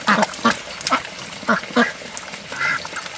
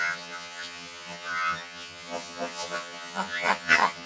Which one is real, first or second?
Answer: first